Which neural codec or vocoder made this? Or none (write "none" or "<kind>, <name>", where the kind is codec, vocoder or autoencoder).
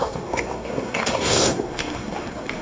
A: codec, SNAC